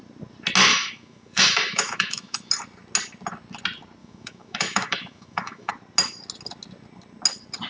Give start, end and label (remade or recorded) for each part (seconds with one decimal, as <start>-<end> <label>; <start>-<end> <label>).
0.0-0.7 recorded; 0.7-2.5 remade; 2.5-4.0 recorded; 4.0-5.7 remade; 5.7-7.7 recorded